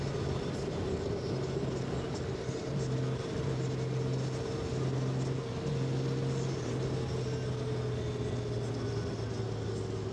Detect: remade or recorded recorded